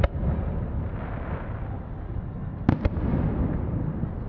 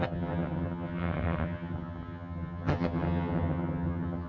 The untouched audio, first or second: first